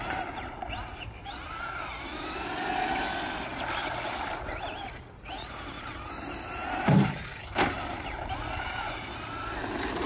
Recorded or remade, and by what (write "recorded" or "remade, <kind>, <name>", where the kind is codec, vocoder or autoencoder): recorded